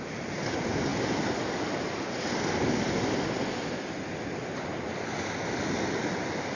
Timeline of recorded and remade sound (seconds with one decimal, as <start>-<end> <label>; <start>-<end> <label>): 0.0-6.6 recorded